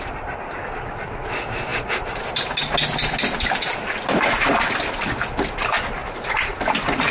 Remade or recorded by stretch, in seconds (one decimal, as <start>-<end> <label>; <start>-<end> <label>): 0.0-7.1 recorded